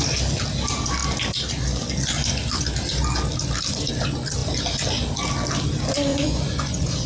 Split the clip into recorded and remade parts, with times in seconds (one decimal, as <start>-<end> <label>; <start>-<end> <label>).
0.0-6.1 recorded; 6.1-7.1 remade